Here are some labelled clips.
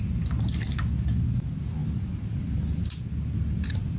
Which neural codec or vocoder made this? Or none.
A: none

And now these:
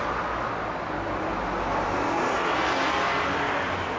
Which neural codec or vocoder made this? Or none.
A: none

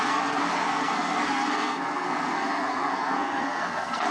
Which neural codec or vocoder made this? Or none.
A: codec, SNAC